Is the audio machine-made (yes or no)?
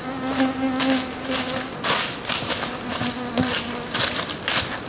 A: no